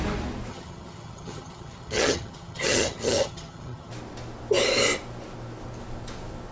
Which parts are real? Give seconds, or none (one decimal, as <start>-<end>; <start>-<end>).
0.0-0.5; 3.9-6.5